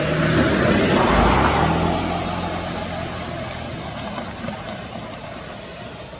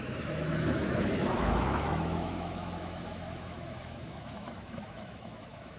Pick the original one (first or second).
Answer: first